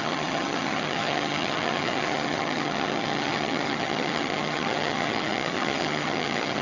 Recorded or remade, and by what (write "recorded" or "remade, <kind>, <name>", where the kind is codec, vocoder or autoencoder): remade, vocoder, HiFi-GAN